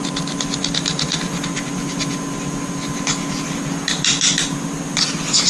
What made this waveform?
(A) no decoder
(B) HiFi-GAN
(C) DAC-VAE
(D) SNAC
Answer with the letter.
A